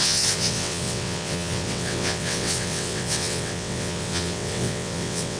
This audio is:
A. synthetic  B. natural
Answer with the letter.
A